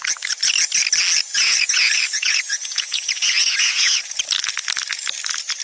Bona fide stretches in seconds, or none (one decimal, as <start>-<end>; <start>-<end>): 0.0-1.3; 4.2-5.6